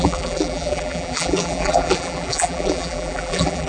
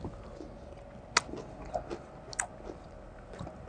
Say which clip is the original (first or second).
second